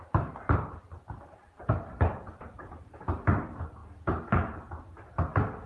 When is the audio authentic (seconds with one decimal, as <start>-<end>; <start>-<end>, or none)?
2.6-5.7

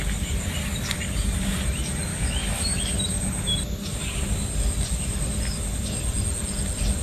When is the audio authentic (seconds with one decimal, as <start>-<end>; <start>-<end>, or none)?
0.0-2.1; 2.8-7.0

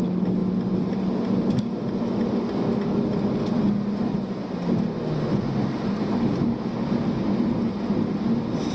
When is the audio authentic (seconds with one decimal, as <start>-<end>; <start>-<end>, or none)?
0.0-8.7

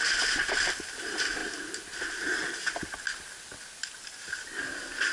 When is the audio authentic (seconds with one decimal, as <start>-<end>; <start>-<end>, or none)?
0.0-5.1

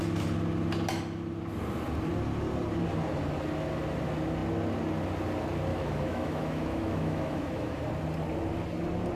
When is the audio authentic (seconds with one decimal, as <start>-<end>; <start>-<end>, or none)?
0.0-5.7; 7.8-9.2

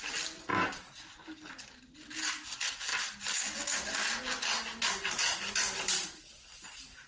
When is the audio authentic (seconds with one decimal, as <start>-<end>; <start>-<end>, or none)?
0.0-7.1

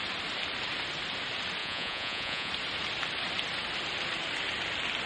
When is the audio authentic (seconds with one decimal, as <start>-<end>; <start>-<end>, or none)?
0.0-1.6; 2.5-5.1

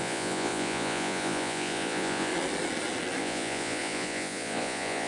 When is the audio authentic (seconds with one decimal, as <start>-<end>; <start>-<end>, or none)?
2.3-3.2